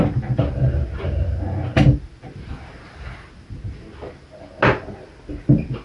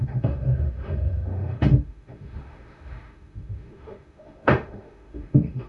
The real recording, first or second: first